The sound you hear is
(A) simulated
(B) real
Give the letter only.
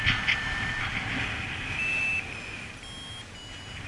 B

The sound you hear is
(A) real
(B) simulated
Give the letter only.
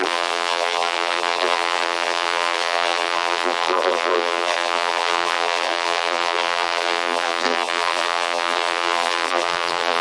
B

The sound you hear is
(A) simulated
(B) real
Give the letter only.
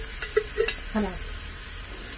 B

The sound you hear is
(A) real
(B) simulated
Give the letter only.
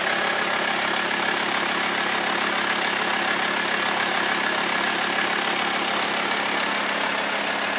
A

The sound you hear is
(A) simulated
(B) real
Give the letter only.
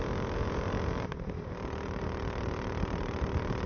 A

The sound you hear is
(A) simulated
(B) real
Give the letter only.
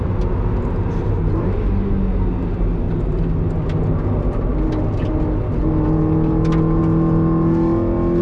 B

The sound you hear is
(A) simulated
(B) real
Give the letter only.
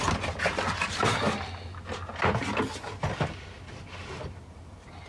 B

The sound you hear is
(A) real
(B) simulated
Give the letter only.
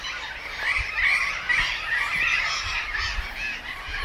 A